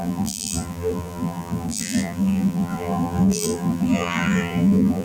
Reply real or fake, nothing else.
fake